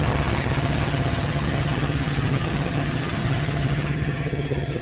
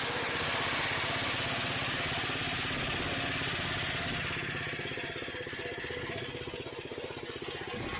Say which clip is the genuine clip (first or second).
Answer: second